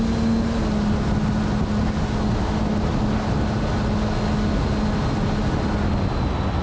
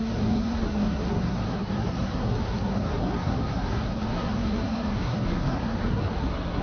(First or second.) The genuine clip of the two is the first